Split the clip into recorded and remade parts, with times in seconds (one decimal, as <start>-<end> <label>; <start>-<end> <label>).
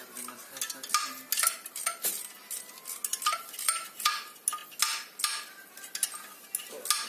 0.0-7.1 recorded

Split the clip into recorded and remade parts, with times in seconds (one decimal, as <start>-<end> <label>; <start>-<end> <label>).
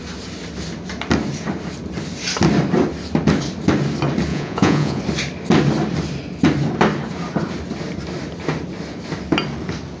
0.0-4.3 recorded; 4.3-5.0 remade; 5.0-10.0 recorded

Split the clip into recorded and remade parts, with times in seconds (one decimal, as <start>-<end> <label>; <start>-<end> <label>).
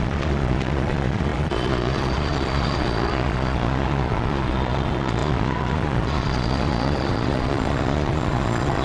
0.0-8.8 remade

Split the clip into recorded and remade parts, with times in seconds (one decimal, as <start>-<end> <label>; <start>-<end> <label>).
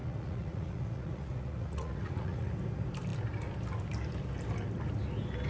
0.0-2.5 remade; 2.5-5.5 recorded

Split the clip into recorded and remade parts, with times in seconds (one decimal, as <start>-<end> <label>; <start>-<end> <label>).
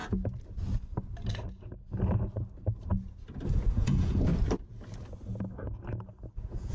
0.0-3.5 recorded; 3.5-4.3 remade; 4.3-6.3 recorded; 6.3-6.7 remade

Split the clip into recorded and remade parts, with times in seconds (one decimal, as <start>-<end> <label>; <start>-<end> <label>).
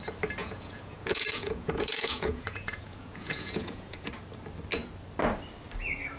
0.0-0.4 recorded; 0.4-4.1 remade; 4.1-6.2 recorded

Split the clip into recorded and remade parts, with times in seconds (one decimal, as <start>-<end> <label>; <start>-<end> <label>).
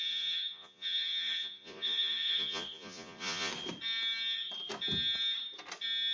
0.0-3.5 remade; 3.5-6.1 recorded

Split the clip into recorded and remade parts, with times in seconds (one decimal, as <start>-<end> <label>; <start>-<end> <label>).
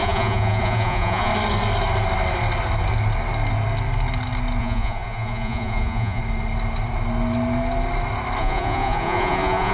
0.0-1.3 remade; 1.3-4.6 recorded; 4.6-6.2 remade; 6.2-8.4 recorded; 8.4-9.7 remade